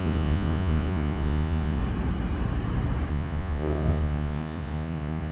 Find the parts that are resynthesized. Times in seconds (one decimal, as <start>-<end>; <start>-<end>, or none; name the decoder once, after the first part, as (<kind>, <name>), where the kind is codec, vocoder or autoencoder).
0.0-1.8 (vocoder, Vocos); 3.1-5.3